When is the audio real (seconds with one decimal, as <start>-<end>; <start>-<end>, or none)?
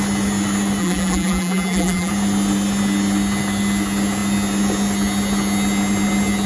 0.0-0.8; 2.1-6.5